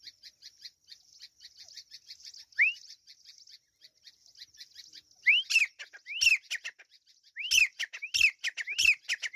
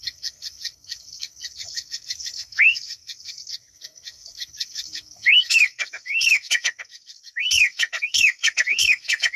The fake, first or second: second